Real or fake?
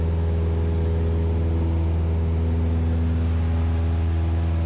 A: real